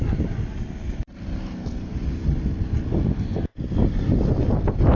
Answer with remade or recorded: recorded